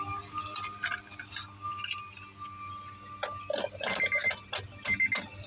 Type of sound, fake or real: real